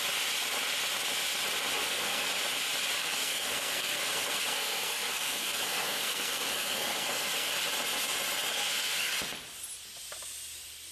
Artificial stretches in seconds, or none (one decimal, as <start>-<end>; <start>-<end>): 1.8-2.3; 3.0-7.5; 8.5-9.1